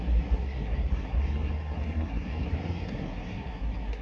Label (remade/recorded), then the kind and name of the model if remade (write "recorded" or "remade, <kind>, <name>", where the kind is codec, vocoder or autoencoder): remade, codec, SNAC